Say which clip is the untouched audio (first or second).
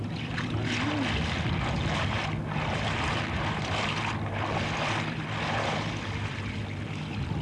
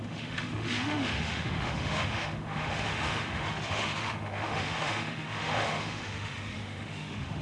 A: first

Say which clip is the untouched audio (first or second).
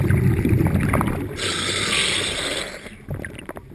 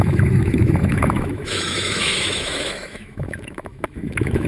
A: first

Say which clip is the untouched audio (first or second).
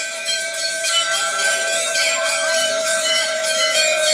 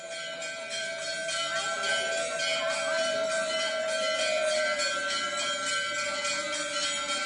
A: second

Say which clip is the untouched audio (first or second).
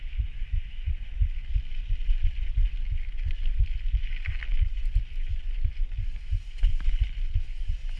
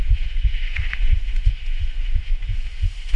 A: first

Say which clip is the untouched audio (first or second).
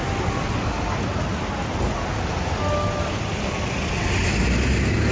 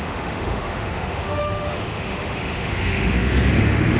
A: first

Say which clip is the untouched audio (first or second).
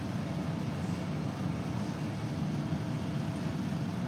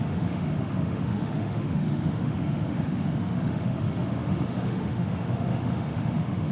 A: first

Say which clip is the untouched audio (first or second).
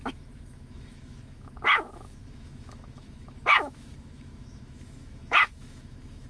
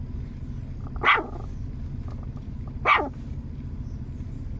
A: second